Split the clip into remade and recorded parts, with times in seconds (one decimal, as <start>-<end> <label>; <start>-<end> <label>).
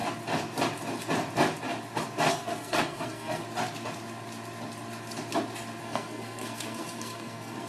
0.0-2.3 recorded; 2.3-3.4 remade; 3.4-5.8 recorded; 5.8-7.7 remade